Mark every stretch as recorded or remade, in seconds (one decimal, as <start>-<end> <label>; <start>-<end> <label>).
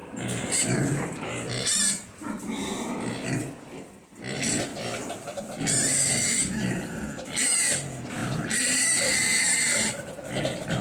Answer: 0.0-2.4 remade; 2.4-10.8 recorded